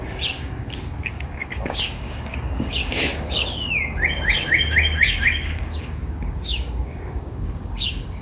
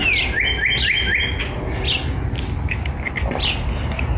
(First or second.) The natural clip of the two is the second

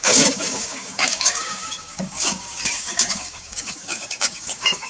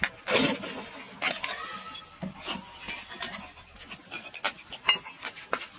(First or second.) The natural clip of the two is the second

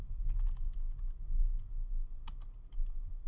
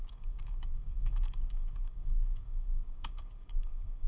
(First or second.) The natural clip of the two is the first